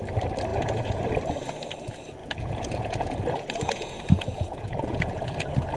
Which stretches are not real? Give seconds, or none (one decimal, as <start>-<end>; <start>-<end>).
0.5-1.0; 2.2-5.8